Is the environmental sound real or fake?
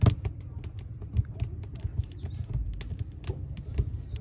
real